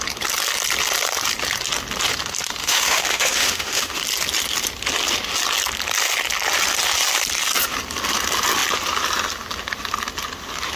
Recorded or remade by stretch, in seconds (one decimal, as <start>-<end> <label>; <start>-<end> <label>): 0.0-2.6 recorded; 2.6-4.0 remade; 4.0-10.8 recorded